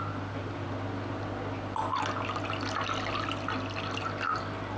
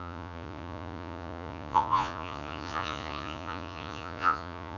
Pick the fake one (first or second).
second